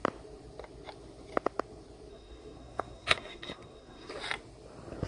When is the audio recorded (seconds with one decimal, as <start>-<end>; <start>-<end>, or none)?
0.0-2.1; 4.1-5.1